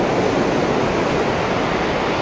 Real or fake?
real